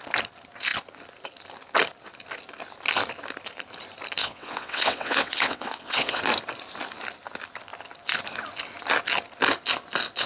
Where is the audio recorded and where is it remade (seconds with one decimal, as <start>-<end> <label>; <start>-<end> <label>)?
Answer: 0.0-4.2 recorded; 4.2-6.2 remade; 6.2-10.3 recorded